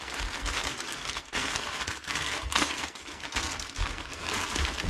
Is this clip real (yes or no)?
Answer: no